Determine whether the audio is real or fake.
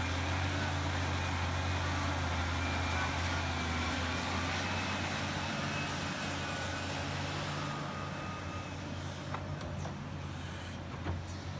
real